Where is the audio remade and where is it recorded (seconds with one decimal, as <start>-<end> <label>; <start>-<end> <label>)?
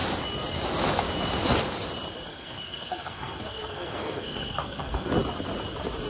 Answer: 0.0-2.3 recorded; 2.3-5.1 remade; 5.1-6.1 recorded